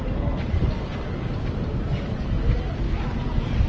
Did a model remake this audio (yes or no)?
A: no